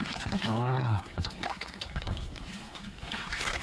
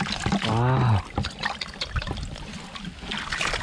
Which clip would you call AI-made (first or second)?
first